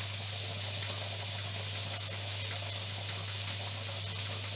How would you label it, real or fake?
real